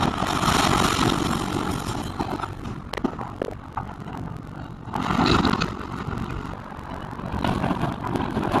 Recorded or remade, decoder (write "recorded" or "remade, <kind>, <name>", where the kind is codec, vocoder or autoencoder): recorded